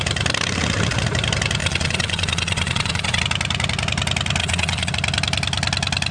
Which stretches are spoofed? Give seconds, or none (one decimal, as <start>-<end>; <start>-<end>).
1.6-3.2; 4.4-4.9